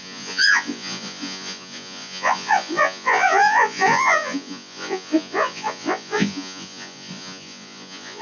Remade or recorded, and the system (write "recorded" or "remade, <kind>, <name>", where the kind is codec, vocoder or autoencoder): remade, vocoder, Vocos